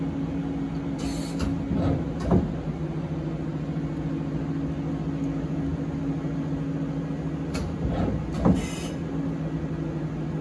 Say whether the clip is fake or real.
real